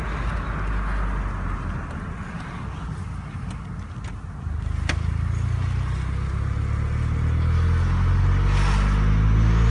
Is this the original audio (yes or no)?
yes